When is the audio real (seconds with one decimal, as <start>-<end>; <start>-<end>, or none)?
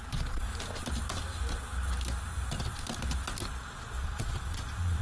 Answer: 0.5-3.5